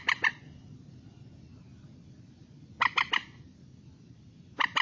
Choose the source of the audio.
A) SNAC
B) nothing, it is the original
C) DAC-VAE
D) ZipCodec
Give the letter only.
B